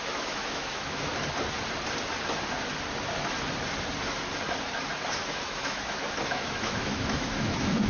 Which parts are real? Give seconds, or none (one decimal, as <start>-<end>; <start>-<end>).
1.1-5.2